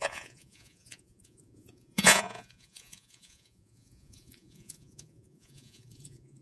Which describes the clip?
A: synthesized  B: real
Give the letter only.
A